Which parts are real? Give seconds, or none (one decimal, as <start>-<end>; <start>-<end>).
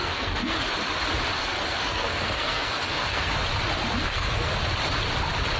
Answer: 0.6-1.4; 3.3-4.0; 4.5-5.6